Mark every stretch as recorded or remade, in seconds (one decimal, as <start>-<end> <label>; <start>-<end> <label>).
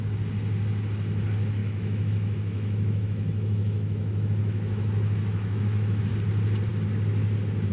0.0-1.6 recorded; 1.6-6.0 remade; 6.0-7.7 recorded